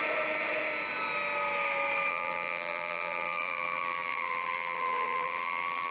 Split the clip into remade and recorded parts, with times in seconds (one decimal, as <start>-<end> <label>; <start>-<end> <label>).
0.0-2.1 recorded; 2.1-5.9 remade